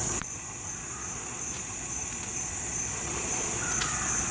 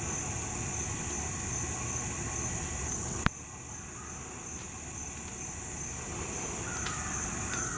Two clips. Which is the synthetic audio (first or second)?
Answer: first